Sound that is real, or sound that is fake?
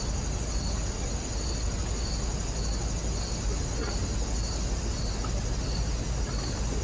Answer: real